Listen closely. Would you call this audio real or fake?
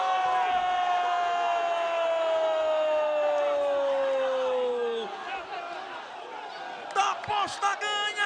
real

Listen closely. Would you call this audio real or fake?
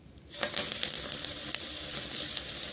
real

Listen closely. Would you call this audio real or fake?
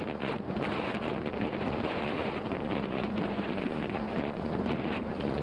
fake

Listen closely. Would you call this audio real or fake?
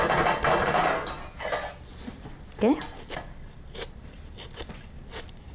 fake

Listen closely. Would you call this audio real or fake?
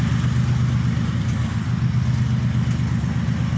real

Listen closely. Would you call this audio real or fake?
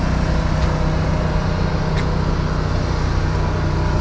real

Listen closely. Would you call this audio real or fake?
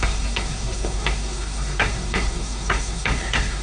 fake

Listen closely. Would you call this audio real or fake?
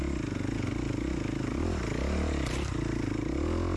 real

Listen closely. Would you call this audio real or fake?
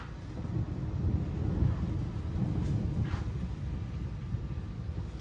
real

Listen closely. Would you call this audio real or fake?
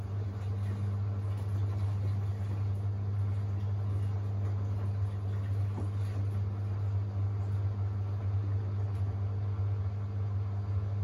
real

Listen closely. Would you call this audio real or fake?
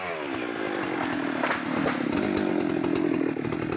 real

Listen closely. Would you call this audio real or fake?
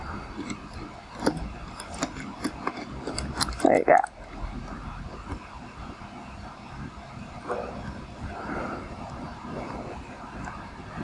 real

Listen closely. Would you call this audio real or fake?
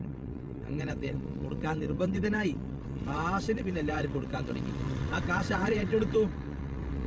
fake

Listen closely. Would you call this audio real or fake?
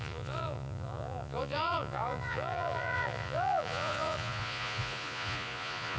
fake